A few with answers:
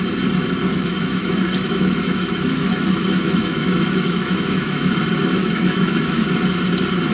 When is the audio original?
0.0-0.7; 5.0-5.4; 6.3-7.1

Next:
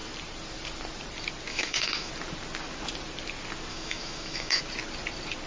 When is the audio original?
0.0-1.5; 2.1-3.7; 4.6-5.5

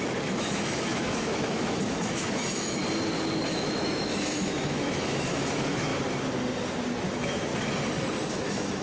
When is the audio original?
2.8-3.5; 5.9-7.0; 7.5-8.3

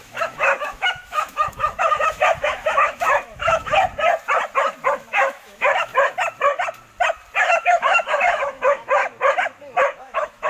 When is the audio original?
3.7-5.1; 5.9-7.5; 9.0-10.0

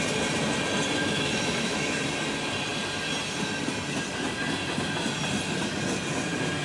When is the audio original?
0.0-1.0; 2.0-6.6

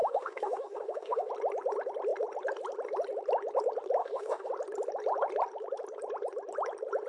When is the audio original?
1.3-4.0; 4.5-7.1